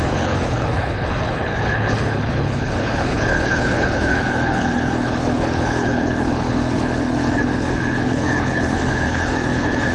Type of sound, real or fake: fake